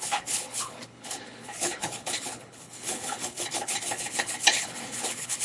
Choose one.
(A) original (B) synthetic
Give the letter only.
B